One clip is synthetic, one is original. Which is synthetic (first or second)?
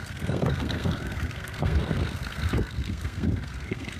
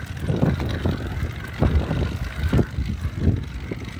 first